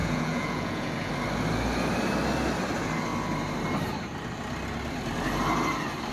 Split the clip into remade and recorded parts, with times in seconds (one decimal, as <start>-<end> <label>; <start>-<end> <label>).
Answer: 0.0-1.1 remade; 1.1-6.1 recorded